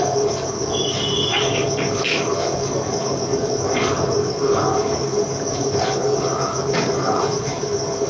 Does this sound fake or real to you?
fake